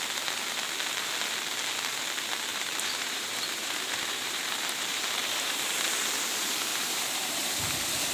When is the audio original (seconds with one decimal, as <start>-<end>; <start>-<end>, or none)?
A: 0.0-2.5; 5.6-6.7; 7.5-8.1